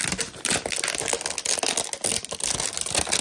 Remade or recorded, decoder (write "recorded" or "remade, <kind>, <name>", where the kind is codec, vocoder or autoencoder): recorded